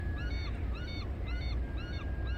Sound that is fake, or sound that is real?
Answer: real